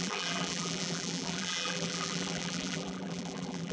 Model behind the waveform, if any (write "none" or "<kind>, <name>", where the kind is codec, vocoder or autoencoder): vocoder, BigVGAN v2